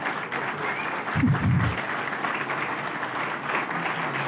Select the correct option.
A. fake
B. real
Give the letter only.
B